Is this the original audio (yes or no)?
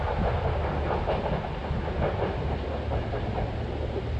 yes